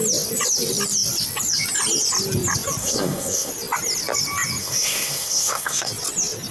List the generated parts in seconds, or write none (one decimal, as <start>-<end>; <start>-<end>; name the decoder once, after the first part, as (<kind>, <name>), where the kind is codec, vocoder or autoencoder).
2.8-3.5 (codec, SNAC); 4.6-5.9

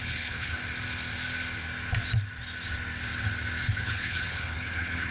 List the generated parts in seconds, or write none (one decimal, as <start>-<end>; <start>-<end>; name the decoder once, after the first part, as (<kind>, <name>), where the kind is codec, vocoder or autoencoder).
0.0-0.6 (codec, HILCodec); 3.7-5.1